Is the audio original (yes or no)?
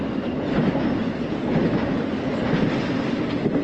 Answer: yes